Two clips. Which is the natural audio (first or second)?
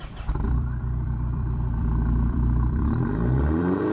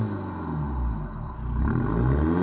second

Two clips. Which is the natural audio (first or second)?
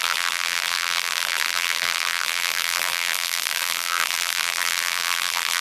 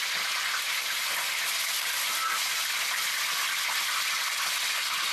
second